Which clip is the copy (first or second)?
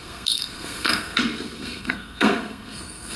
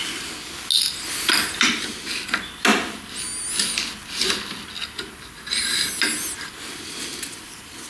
first